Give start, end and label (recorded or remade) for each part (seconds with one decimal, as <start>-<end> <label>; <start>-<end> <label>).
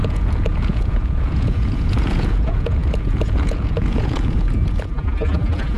0.0-5.8 remade